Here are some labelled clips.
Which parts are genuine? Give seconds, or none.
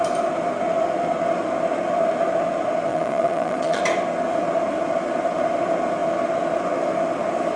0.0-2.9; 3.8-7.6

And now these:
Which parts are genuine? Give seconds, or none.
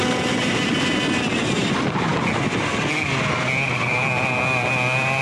0.0-5.2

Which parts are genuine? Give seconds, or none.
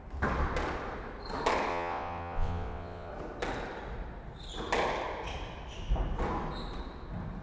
0.0-1.7; 3.1-7.4